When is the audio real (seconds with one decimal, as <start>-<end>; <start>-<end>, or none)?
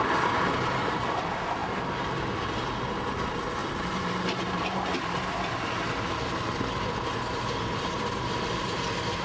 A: 0.0-3.6; 5.0-9.2